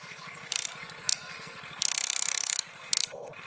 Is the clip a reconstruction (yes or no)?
yes